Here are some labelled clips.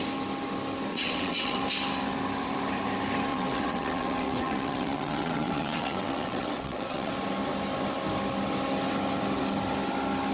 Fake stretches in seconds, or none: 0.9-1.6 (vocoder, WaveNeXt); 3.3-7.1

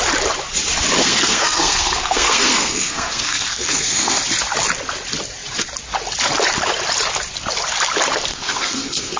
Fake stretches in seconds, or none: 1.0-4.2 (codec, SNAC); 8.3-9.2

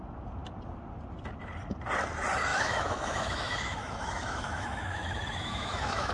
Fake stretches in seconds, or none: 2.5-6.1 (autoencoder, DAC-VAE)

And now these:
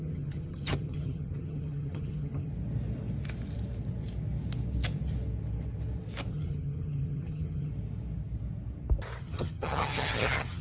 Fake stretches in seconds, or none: 0.0-2.5 (vocoder, HiFi-GAN); 6.3-7.7; 9.2-10.6